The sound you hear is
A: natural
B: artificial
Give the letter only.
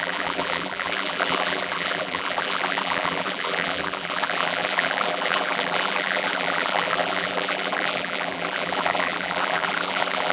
B